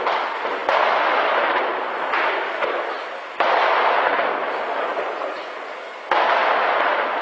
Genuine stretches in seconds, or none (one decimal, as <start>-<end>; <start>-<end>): 0.0-7.2